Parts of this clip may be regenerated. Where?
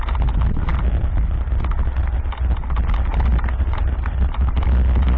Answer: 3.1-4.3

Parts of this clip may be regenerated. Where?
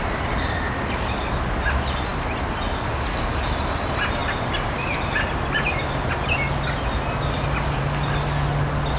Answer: none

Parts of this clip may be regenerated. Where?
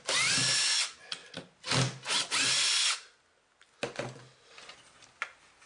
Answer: none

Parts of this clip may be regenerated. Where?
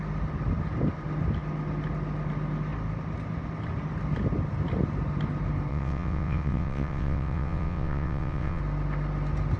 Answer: 5.7-8.6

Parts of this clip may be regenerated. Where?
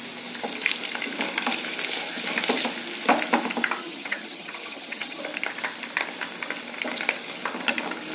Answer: 3.8-5.2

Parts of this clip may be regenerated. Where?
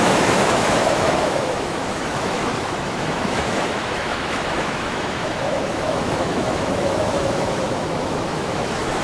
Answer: 0.0-9.0